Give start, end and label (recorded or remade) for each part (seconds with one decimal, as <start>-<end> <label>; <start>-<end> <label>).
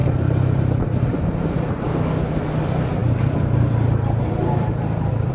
0.0-1.9 remade; 1.9-3.0 recorded; 3.0-5.3 remade